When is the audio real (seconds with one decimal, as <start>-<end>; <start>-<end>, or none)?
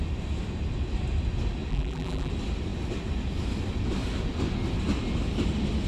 0.0-1.7; 2.3-5.9